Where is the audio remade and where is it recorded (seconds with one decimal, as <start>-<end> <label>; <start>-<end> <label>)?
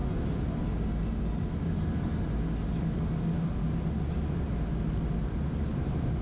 0.0-1.7 recorded; 1.7-2.1 remade; 2.1-5.7 recorded; 5.7-6.2 remade